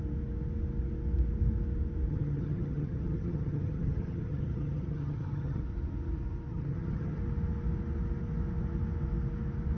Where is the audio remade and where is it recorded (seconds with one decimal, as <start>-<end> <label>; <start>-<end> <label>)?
0.0-2.1 recorded; 2.1-5.6 remade; 5.6-6.5 recorded; 6.5-7.2 remade; 7.2-9.8 recorded